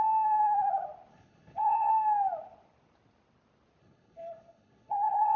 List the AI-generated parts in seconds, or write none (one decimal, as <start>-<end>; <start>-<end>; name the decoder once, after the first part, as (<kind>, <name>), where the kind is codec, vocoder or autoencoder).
1.1-1.9 (codec, HILCodec); 3.8-5.4